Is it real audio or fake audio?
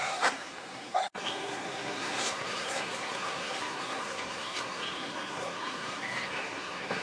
fake